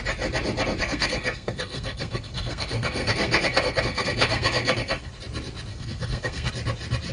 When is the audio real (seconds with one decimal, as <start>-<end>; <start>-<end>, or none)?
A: 0.0-0.8; 5.1-5.7; 6.5-7.1